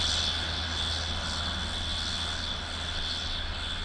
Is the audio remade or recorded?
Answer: recorded